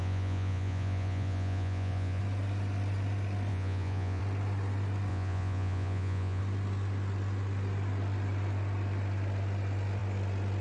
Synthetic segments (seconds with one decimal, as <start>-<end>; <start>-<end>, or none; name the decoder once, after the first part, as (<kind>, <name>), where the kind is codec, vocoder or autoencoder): 0.0-2.2 (vocoder, Vocos); 3.5-4.2; 5.1-6.4